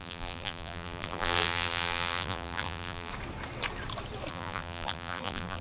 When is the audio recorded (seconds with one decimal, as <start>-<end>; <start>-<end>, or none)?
3.1-4.3